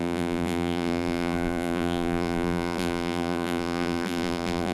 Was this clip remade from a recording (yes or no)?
yes